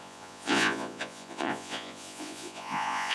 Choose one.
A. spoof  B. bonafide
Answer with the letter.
A